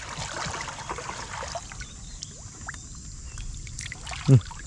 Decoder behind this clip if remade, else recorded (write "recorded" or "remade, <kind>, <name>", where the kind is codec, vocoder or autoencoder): recorded